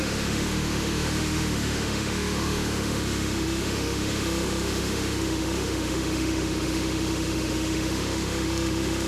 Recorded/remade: remade